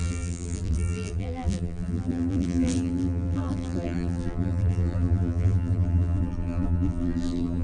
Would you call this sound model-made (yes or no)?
yes